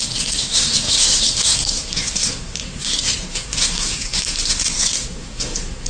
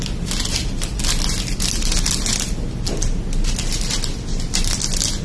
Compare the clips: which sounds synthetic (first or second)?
first